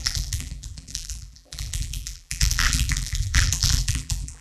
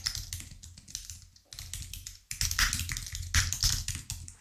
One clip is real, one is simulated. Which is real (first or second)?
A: second